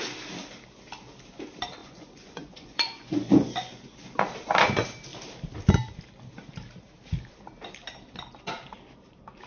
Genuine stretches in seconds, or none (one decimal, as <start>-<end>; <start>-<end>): 0.0-1.8; 4.0-9.5